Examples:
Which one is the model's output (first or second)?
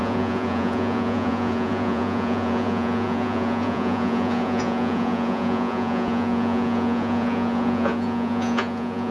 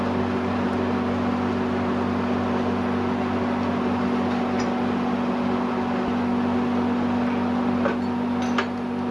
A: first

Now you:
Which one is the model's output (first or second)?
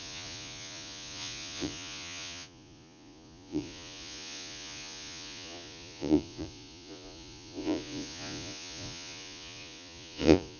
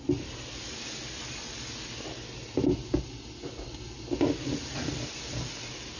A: first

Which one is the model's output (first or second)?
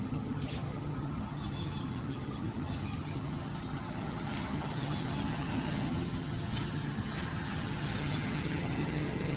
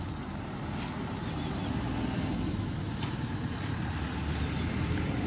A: first